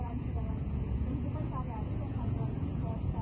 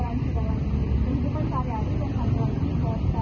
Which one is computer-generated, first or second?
first